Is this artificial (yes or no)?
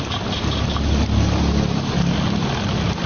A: no